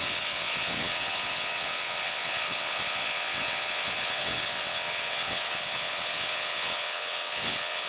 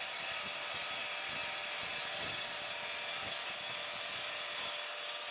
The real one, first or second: second